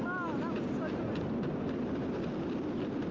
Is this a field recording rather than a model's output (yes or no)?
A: yes